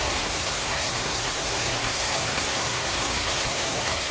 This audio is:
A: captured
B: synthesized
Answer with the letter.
B